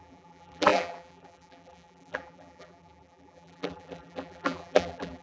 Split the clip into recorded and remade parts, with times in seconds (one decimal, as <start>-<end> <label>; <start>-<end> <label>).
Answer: 0.0-5.2 remade